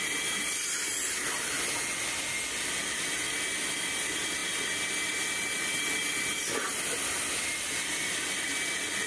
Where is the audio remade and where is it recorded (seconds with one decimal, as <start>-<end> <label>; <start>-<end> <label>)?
0.0-9.1 recorded